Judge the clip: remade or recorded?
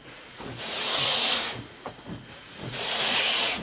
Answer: remade